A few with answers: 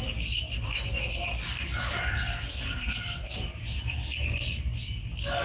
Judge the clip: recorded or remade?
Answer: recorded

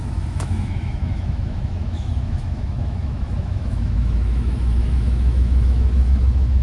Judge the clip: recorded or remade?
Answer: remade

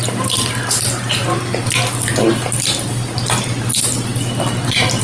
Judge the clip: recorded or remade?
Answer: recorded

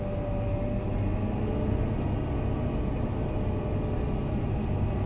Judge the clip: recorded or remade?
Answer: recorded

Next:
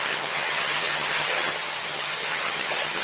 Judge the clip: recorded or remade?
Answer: remade